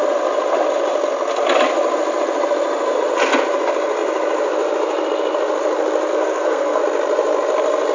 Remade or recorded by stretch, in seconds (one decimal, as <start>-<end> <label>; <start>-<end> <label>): 0.0-6.1 recorded; 6.1-6.8 remade; 6.8-7.9 recorded